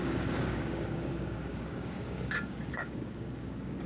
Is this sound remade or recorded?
remade